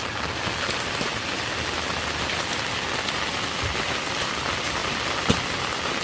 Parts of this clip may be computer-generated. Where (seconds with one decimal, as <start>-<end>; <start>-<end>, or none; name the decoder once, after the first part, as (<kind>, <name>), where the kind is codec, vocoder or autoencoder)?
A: none